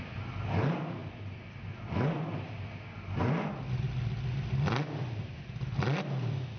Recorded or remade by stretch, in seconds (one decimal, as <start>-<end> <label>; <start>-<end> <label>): 0.0-6.6 recorded